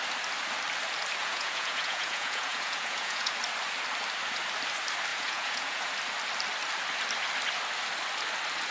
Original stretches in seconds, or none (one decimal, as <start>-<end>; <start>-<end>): 0.0-1.2; 3.3-5.1; 5.9-8.7